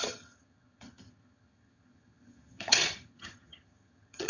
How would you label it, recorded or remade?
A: remade